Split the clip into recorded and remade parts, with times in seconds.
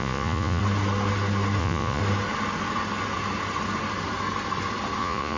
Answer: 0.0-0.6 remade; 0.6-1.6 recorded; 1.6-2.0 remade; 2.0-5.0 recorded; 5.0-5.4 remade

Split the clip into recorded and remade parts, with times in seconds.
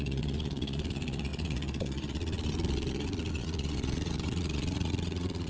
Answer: 0.0-5.5 remade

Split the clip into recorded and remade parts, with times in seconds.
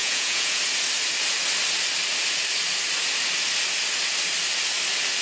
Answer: 0.0-0.6 remade; 0.6-5.2 recorded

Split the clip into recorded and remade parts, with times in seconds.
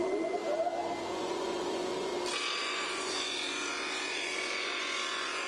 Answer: 0.0-0.4 remade; 0.4-1.1 recorded; 1.1-2.1 remade; 2.1-2.6 recorded; 2.6-5.5 remade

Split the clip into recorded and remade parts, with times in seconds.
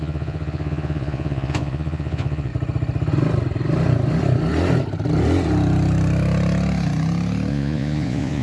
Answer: 0.0-2.5 remade; 2.5-7.5 recorded; 7.5-8.4 remade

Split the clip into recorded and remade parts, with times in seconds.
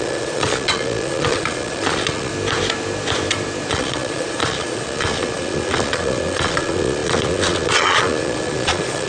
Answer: 0.0-2.3 remade; 2.3-3.7 recorded; 3.7-9.1 remade